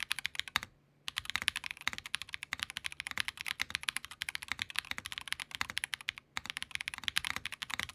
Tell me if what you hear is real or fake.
real